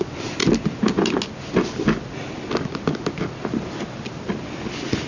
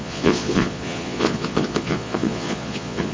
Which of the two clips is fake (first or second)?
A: second